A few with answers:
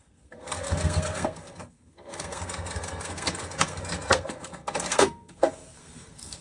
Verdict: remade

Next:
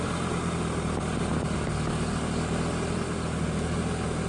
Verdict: recorded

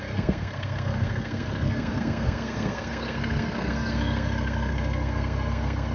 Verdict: remade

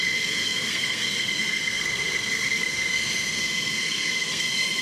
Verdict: remade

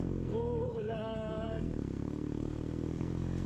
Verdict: remade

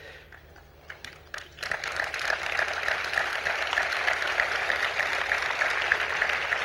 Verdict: recorded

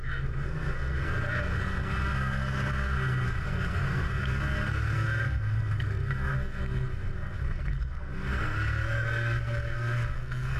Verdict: remade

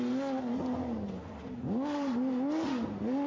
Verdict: recorded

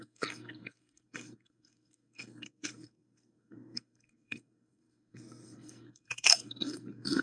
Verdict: remade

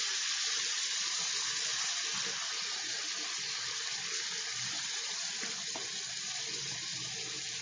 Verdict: recorded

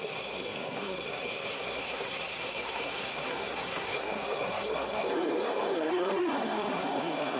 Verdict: remade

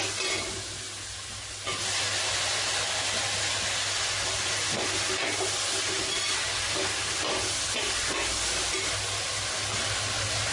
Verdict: recorded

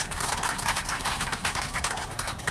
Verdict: remade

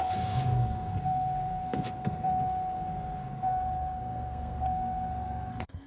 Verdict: remade